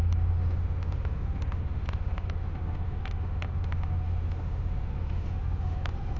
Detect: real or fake fake